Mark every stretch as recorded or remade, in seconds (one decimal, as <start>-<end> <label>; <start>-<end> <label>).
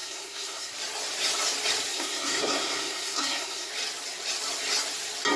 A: 0.0-0.7 remade; 0.7-1.9 recorded; 1.9-3.7 remade; 3.7-5.4 recorded